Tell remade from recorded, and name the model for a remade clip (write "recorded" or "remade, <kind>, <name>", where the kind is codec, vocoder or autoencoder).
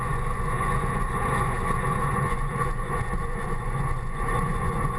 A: remade, vocoder, Vocos